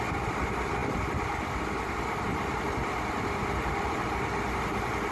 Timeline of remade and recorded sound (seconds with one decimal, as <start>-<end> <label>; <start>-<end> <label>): 0.0-5.1 recorded